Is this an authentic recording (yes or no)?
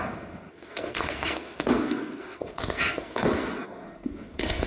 no